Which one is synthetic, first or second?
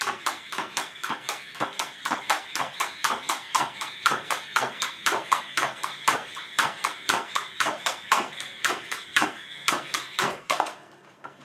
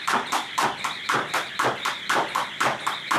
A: first